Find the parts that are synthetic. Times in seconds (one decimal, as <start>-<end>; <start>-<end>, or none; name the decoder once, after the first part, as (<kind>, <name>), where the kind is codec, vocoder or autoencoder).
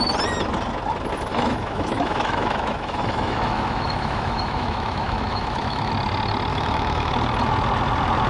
1.3-5.9 (autoencoder, DAC-VAE); 6.5-7.1